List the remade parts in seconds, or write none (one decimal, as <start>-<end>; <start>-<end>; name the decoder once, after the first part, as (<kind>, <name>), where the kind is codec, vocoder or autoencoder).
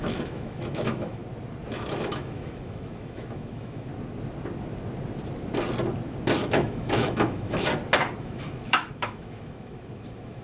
0.0-1.2 (autoencoder, DAC-VAE); 1.7-3.9; 6.4-7.7; 8.2-10.4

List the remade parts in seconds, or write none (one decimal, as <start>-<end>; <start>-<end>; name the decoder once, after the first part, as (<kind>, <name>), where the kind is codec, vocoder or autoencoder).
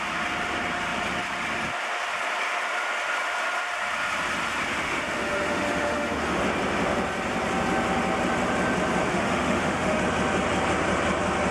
4.7-6.4 (autoencoder, DAC-VAE); 9.1-10.0